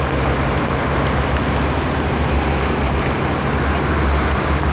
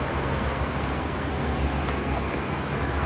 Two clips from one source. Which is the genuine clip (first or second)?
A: first